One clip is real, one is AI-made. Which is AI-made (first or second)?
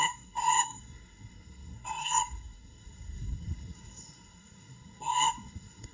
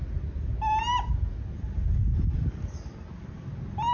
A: first